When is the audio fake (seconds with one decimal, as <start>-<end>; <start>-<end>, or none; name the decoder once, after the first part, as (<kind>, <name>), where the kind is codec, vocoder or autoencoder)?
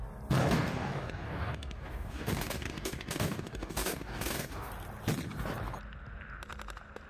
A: 0.4-4.7 (codec, DAC)